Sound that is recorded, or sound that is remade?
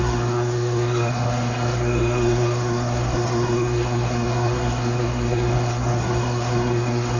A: remade